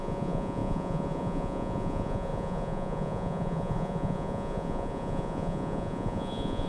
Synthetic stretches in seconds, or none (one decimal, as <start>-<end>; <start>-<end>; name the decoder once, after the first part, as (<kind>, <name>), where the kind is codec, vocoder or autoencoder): 0.0-6.7 (vocoder, Vocos)